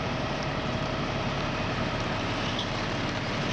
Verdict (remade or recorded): remade